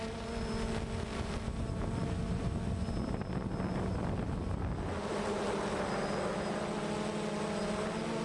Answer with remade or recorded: recorded